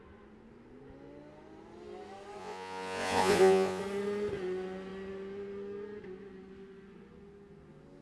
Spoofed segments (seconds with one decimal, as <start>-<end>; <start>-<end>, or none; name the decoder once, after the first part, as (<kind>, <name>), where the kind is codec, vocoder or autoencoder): 2.4-3.8 (vocoder, Vocos)